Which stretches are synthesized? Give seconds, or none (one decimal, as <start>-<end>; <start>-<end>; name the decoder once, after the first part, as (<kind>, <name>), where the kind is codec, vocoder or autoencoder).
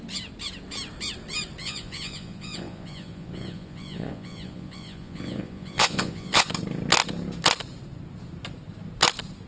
1.6-6.5 (vocoder, Vocos)